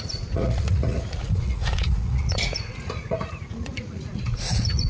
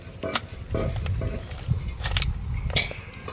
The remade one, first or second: first